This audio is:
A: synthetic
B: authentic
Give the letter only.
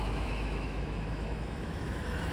A